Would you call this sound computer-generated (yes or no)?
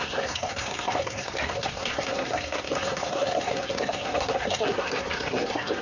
yes